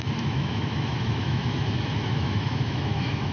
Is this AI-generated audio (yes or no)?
yes